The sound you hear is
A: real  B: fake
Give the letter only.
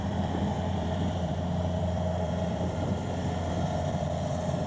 B